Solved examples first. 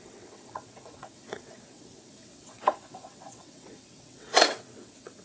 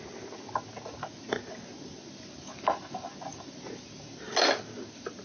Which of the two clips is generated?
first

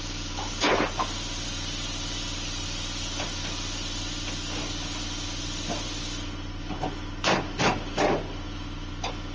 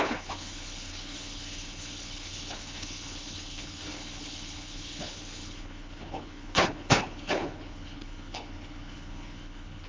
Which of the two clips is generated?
second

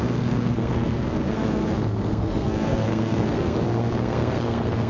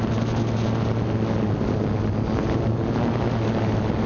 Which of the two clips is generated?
first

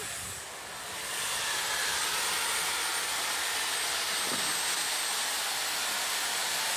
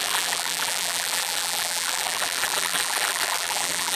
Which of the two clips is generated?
second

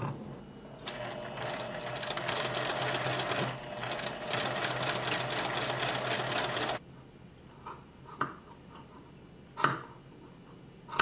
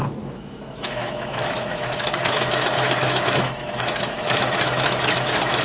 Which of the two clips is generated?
second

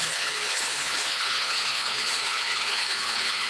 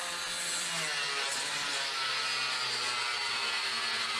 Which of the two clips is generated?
first